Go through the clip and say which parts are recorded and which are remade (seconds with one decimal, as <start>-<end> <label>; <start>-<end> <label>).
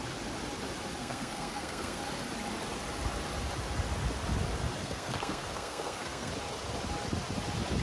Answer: 0.0-1.0 recorded; 1.0-2.0 remade; 2.0-4.8 recorded; 4.8-6.3 remade; 6.3-7.8 recorded